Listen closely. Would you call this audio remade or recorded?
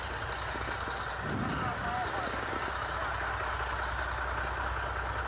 recorded